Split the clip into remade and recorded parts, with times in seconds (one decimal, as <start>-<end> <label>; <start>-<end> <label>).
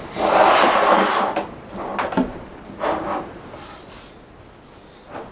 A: 0.0-5.3 recorded